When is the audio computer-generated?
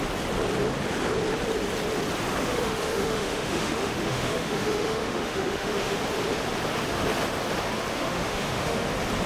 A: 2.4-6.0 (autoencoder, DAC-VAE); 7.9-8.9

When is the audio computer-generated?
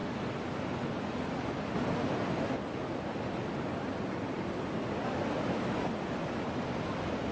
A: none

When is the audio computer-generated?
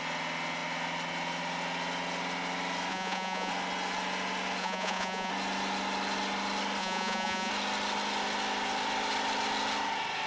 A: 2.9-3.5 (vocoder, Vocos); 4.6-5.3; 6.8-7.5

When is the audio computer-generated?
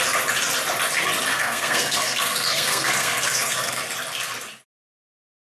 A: 1.3-3.8 (codec, SNAC)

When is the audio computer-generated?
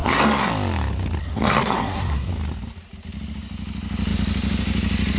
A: 0.0-0.5 (codec, SNAC); 1.2-2.3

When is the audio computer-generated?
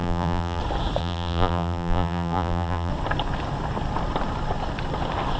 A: 0.0-0.6 (vocoder, BigVGAN v2); 1.0-2.9